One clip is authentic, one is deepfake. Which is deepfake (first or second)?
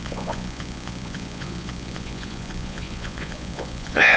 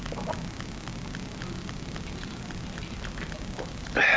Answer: first